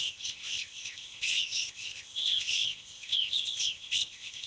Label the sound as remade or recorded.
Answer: remade